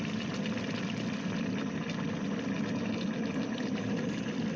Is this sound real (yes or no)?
yes